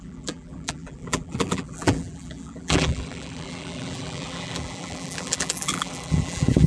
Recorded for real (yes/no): no